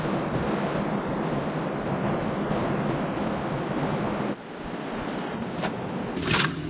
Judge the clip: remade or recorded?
recorded